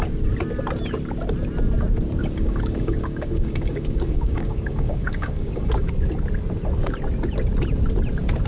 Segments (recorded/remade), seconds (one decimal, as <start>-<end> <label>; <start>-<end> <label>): 0.0-2.2 recorded; 2.2-5.9 remade; 5.9-8.5 recorded